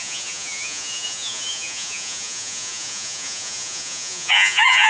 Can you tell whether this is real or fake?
fake